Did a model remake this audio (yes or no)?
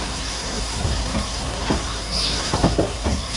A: yes